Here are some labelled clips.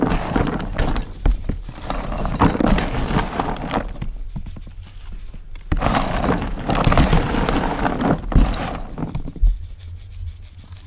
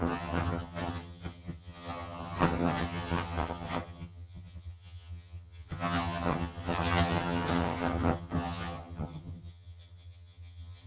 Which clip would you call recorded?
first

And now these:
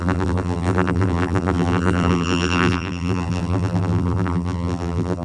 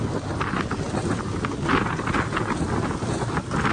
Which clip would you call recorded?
second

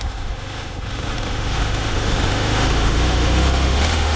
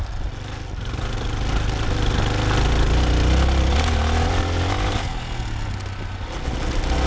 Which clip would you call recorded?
second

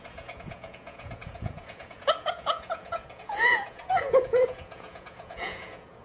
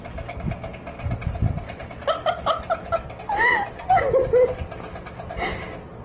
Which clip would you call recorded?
second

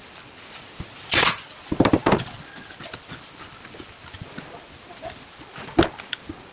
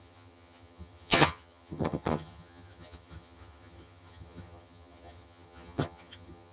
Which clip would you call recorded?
first